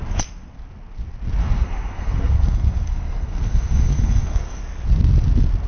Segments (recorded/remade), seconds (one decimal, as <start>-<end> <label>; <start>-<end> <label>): 0.0-1.4 recorded; 1.4-4.6 remade; 4.6-5.7 recorded